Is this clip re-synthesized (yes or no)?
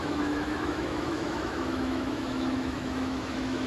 yes